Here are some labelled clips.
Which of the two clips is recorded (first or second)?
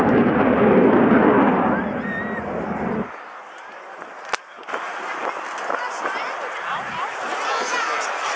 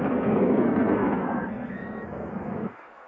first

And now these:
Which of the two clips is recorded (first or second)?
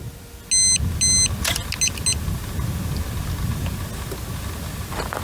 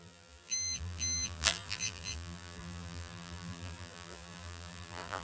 first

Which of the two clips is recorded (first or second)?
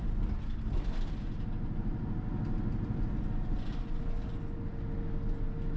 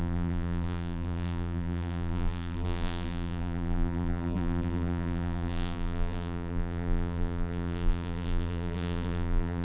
first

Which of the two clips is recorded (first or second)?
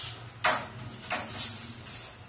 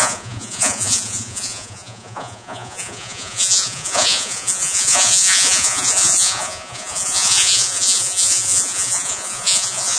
first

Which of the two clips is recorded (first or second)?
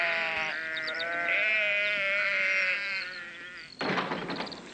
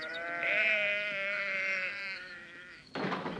first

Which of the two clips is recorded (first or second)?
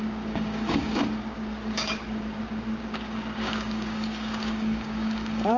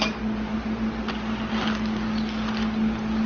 second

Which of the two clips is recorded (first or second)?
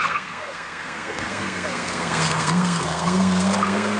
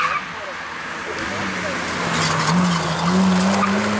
second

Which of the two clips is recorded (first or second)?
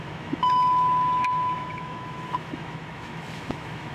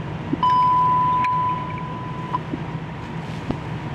second